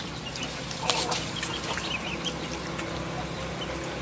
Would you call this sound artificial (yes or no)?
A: no